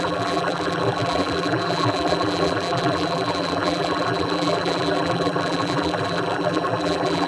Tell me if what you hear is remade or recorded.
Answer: remade